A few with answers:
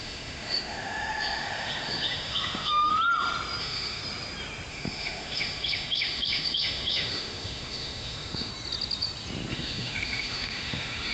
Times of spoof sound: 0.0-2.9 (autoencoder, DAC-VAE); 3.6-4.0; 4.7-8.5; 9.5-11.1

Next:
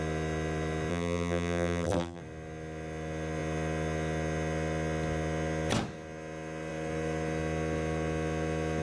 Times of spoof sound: 0.9-2.2 (vocoder, BigVGAN v2)

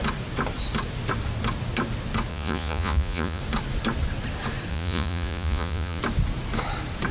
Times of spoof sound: 2.3-3.4 (vocoder, Vocos); 4.7-6.0

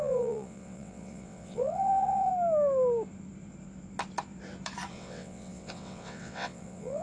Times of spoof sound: 0.0-2.3 (vocoder, WaveNeXt); 4.9-7.0